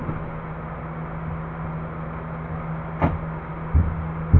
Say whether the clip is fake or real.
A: real